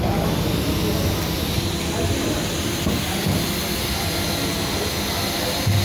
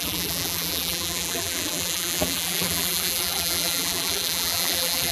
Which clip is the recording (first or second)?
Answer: first